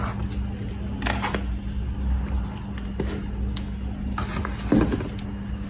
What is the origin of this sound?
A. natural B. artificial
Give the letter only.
A